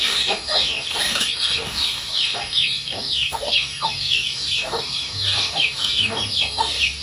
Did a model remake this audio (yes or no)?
yes